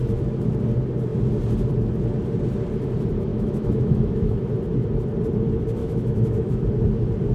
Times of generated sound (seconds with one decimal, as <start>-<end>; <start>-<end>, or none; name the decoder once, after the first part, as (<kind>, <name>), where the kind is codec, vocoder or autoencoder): 3.3-4.4 (autoencoder, DAC-VAE); 5.8-6.6